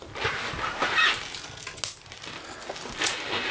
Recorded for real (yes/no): yes